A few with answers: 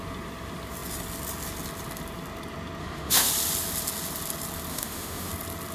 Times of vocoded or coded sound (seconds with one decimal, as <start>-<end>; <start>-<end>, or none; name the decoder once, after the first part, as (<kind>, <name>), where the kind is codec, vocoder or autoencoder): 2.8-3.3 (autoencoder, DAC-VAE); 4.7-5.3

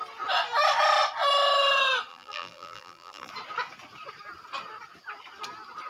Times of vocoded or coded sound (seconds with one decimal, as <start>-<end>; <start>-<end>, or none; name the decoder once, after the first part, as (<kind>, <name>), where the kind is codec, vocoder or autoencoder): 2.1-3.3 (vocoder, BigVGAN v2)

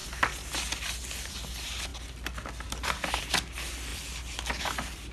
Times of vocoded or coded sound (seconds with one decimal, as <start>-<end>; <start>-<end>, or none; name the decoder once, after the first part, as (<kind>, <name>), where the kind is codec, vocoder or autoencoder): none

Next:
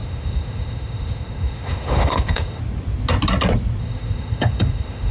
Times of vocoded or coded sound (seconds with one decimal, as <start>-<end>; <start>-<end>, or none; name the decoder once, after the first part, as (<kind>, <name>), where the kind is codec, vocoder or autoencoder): 0.0-2.6 (autoencoder, DAC-VAE); 3.8-5.1

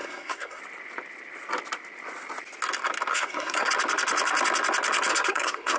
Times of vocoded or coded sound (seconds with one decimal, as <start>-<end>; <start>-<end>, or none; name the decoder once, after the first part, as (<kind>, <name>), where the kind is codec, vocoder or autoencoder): 0.0-0.6 (codec, SNAC); 3.1-3.7; 5.1-5.8

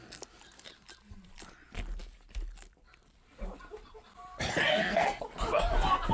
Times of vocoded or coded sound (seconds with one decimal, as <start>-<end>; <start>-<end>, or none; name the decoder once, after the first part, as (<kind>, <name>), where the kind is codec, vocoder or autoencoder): 4.7-5.2 (codec, SNAC)